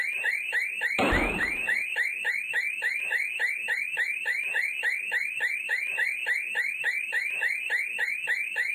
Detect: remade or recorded remade